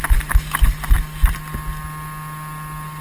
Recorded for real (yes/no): yes